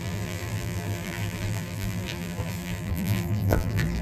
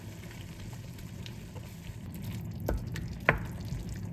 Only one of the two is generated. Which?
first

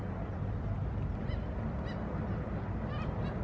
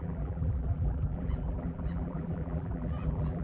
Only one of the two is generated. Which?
second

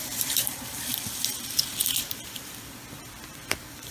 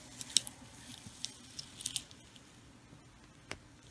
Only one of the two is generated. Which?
first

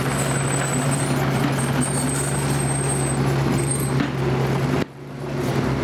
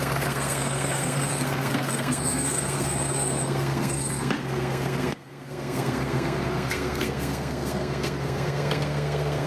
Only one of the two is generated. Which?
second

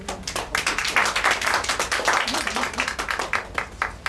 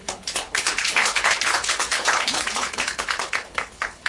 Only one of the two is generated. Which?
second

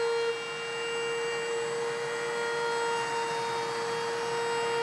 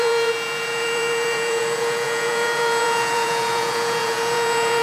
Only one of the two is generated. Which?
second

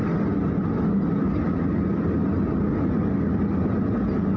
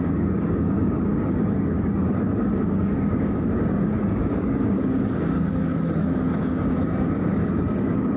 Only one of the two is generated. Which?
second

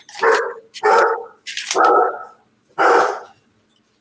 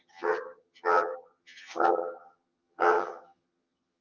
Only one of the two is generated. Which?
second